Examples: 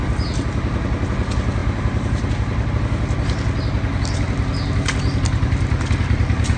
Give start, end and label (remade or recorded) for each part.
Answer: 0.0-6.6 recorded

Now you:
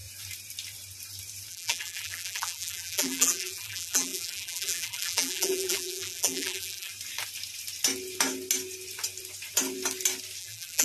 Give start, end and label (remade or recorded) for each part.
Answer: 0.0-1.5 recorded; 1.5-6.9 remade; 6.9-10.4 recorded; 10.4-10.8 remade

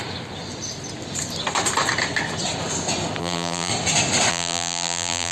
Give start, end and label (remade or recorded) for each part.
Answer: 0.0-3.2 recorded; 3.2-3.7 remade; 3.7-4.3 recorded; 4.3-5.3 remade

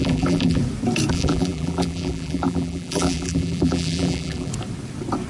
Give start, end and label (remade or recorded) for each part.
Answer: 0.0-0.6 remade; 0.6-1.1 recorded; 1.1-4.5 remade; 4.5-5.3 recorded

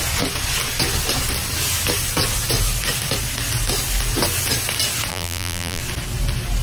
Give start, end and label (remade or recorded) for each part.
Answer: 0.0-5.1 recorded; 5.1-5.8 remade; 5.8-6.6 recorded

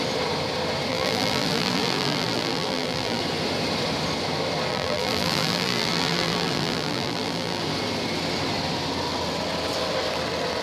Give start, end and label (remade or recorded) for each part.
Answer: 0.0-0.9 recorded; 0.9-3.2 remade; 3.2-4.7 recorded; 4.7-7.6 remade; 7.6-10.6 recorded